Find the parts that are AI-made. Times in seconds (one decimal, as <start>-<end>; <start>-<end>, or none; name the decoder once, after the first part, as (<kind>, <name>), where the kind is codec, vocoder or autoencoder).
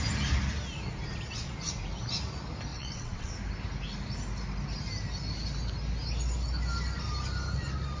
2.7-3.3 (vocoder, WaveNeXt)